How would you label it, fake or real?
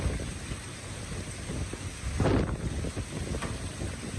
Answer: real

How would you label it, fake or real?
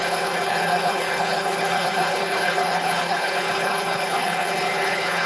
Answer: fake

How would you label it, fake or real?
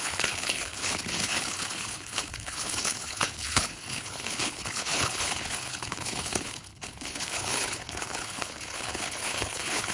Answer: fake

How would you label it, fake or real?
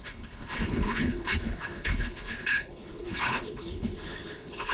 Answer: fake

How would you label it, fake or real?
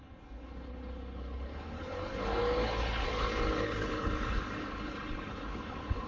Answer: fake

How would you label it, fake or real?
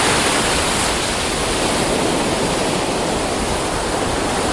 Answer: real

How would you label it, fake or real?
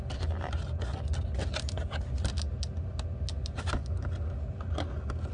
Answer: real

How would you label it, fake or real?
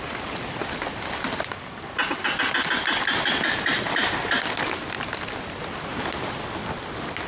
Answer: real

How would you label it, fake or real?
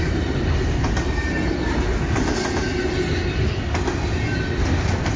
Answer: real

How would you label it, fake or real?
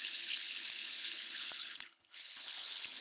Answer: fake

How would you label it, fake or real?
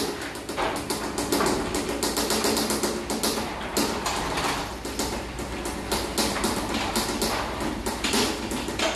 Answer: real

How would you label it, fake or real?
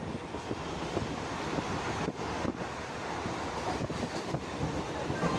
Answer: real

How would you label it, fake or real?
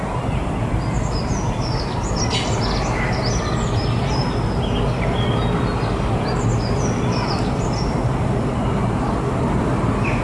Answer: real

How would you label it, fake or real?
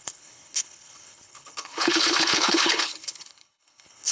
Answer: fake